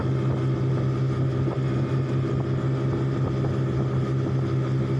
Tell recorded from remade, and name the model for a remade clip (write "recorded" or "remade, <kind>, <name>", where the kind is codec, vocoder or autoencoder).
recorded